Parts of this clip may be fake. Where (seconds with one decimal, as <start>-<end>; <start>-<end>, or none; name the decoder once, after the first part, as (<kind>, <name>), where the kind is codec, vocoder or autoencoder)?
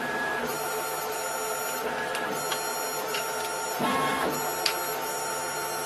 none